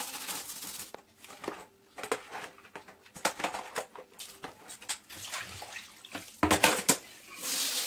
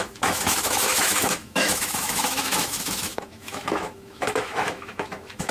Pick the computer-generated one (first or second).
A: second